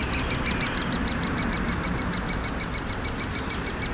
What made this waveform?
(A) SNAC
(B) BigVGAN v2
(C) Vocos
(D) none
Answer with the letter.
D